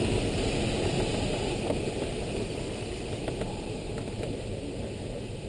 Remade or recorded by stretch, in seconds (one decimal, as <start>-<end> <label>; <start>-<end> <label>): 0.0-5.5 recorded